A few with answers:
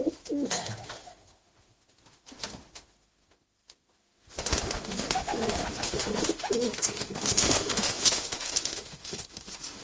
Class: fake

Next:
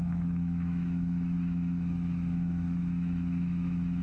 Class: fake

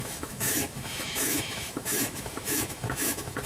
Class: fake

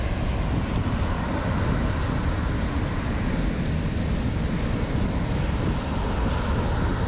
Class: real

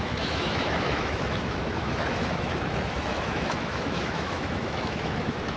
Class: fake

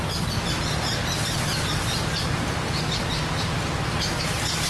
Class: real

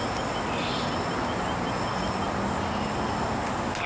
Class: real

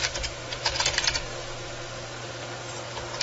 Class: real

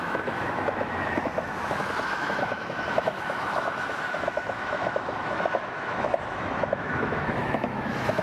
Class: fake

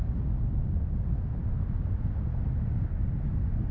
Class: real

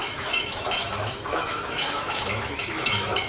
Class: fake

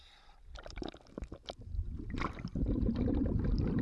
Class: real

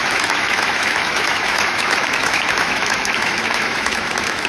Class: fake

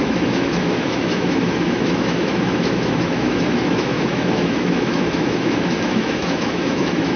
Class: fake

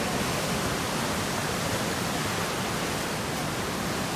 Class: real